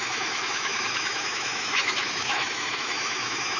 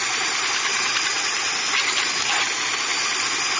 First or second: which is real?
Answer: second